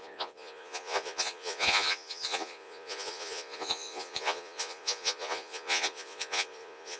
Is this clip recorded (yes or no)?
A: no